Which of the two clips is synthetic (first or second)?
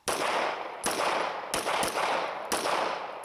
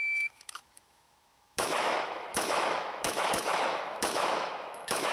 second